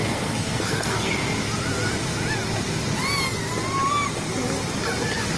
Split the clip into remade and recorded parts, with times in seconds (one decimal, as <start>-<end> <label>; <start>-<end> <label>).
0.0-1.1 remade; 1.1-5.4 recorded